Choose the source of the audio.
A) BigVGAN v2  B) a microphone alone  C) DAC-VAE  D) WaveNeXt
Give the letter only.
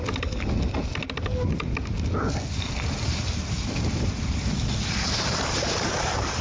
B